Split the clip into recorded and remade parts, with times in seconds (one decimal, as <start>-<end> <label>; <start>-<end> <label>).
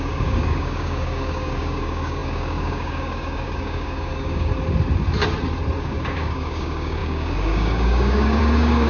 0.0-4.5 remade; 4.5-5.8 recorded; 5.8-8.9 remade